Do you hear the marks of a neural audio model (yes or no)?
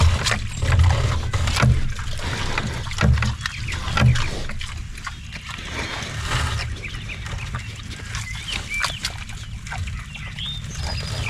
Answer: no